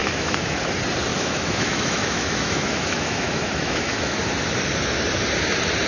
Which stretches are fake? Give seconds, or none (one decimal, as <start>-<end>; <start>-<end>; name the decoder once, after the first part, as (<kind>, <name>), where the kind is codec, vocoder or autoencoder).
0.0-0.6 (autoencoder, DAC-VAE); 1.1-4.2

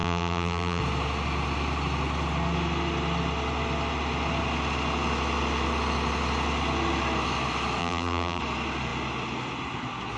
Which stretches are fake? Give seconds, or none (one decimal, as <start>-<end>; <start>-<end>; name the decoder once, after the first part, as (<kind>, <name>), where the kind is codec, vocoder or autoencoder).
0.0-0.8 (vocoder, BigVGAN v2); 7.8-8.4

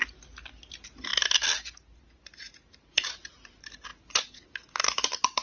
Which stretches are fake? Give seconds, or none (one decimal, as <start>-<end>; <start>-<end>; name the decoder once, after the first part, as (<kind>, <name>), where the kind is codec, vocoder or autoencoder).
0.7-1.1 (vocoder, BigVGAN v2); 2.0-3.9; 4.8-5.4

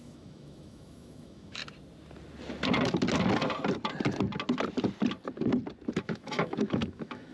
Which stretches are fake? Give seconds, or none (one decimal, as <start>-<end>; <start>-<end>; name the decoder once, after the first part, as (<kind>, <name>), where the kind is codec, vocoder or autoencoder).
0.0-1.6 (autoencoder, DAC-VAE); 6.0-7.3

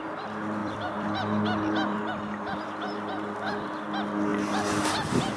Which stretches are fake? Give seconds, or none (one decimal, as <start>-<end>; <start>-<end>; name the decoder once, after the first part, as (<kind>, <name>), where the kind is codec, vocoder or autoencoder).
0.6-3.8 (vocoder, BigVGAN v2)

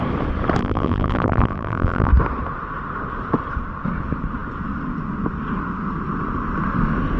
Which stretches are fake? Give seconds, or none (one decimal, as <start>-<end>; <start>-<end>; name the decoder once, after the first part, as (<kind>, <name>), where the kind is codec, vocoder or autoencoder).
0.6-2.1 (vocoder, BigVGAN v2)

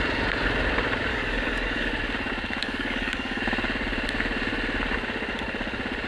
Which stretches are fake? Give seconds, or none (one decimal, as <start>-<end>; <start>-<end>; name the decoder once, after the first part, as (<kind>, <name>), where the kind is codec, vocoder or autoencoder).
1.1-1.9 (codec, DAC); 2.6-3.4